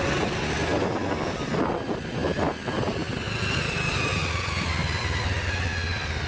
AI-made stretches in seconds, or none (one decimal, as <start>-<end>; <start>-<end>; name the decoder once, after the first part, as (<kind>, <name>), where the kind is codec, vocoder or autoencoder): 4.2-4.7 (vocoder, Vocos)